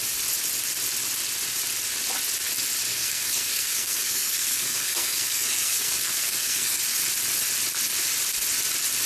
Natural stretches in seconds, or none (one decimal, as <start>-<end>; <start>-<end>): 0.0-2.9; 6.8-9.1